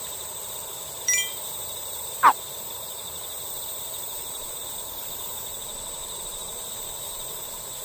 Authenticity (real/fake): fake